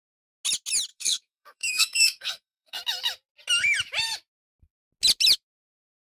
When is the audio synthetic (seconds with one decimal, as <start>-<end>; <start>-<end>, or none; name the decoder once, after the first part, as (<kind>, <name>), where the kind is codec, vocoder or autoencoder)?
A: 0.9-2.8 (codec, SNAC)